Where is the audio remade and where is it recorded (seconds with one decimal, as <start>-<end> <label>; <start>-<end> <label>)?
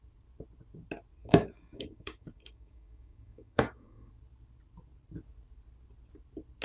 0.0-1.2 recorded; 1.2-4.1 remade; 4.1-6.6 recorded